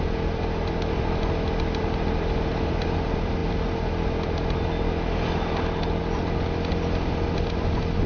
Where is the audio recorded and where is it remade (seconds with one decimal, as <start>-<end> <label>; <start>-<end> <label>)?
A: 0.0-8.1 recorded